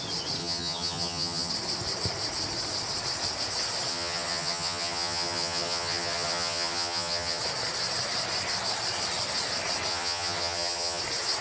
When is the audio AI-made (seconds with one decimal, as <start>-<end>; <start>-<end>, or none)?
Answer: 0.4-1.5; 3.9-7.4; 9.9-11.0